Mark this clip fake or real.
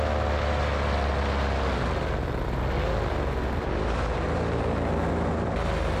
real